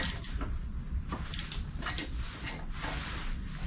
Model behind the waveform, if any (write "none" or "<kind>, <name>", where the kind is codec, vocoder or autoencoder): none